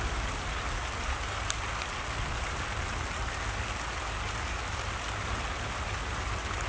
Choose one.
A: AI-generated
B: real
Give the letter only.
B